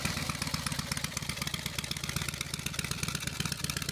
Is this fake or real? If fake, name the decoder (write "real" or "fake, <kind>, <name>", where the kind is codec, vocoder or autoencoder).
real